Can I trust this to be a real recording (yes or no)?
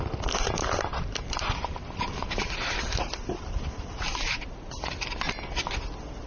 yes